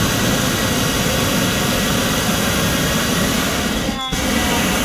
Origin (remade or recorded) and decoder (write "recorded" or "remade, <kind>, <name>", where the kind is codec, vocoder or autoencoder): recorded